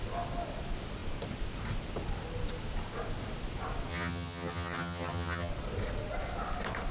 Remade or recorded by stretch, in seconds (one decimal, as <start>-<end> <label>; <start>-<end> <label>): 0.0-3.9 recorded; 3.9-5.5 remade; 5.5-6.9 recorded